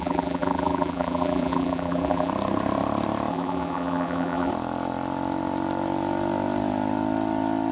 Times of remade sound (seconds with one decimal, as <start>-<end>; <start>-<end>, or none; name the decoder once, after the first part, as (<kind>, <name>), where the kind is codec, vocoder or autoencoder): 0.0-2.3 (vocoder, BigVGAN v2); 3.3-4.5